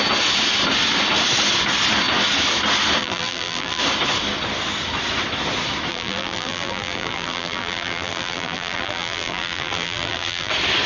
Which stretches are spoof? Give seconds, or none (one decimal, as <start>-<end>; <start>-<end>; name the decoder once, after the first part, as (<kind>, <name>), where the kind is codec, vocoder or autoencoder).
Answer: 3.0-3.8 (vocoder, BigVGAN v2); 5.9-10.5